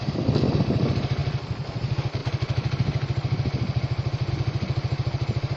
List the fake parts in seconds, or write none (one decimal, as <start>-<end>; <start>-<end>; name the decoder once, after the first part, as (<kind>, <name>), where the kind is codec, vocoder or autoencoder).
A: 2.2-4.3 (vocoder, BigVGAN v2)